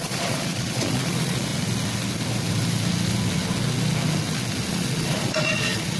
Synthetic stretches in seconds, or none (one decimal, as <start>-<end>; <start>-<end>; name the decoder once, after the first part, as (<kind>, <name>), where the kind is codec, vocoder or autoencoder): 0.0-1.5 (vocoder, Vocos); 4.7-6.0